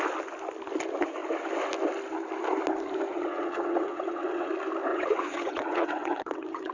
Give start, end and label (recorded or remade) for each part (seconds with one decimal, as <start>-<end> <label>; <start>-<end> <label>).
0.0-3.1 recorded; 3.1-4.5 remade; 4.5-4.9 recorded; 4.9-6.7 remade